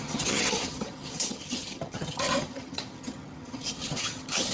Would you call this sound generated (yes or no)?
yes